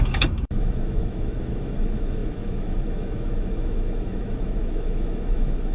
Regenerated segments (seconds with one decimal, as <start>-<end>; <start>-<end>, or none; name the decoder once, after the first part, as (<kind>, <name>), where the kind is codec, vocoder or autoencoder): 0.0-5.7 (autoencoder, DAC-VAE)